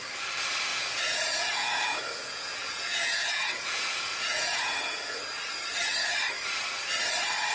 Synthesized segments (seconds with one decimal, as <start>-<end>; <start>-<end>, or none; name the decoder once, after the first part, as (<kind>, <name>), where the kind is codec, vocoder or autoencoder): 0.7-5.2 (vocoder, Vocos)